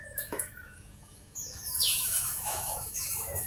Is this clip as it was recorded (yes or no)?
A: no